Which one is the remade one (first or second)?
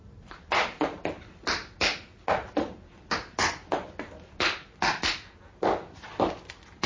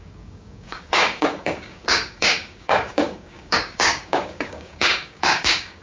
second